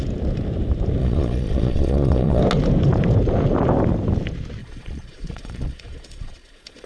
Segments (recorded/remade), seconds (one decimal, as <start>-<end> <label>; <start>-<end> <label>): 0.0-1.0 recorded; 1.0-2.4 remade; 2.4-4.6 recorded; 4.6-6.9 remade